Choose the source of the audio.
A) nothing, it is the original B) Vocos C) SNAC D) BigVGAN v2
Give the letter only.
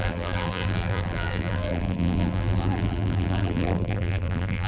D